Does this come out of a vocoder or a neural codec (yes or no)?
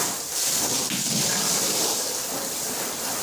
no